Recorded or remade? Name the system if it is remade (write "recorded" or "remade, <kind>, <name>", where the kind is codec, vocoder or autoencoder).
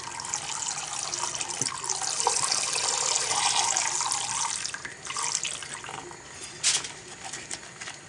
recorded